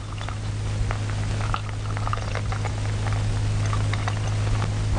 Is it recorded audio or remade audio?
recorded